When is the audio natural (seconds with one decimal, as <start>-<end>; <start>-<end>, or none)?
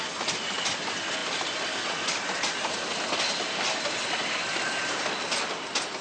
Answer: 0.0-6.0